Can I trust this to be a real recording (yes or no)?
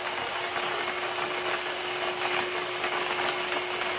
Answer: yes